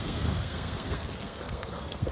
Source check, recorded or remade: remade